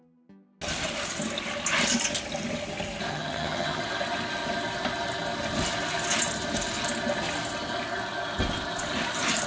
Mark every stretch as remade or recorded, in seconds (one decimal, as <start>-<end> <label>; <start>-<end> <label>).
0.0-3.1 recorded; 3.1-3.8 remade; 3.8-9.5 recorded